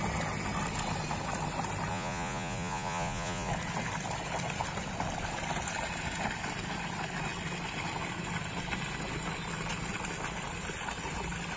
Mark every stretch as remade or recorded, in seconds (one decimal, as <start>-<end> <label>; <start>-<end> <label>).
0.0-1.9 recorded; 1.9-3.5 remade; 3.5-11.6 recorded